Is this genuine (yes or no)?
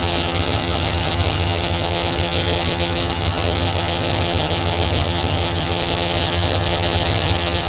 no